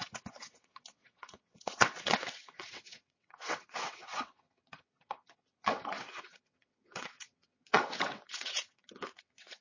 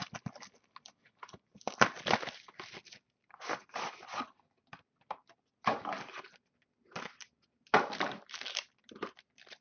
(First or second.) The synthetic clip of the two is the first